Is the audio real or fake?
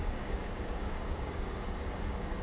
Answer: fake